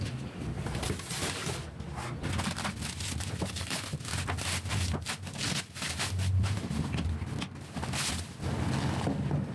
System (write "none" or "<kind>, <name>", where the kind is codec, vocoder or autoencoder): none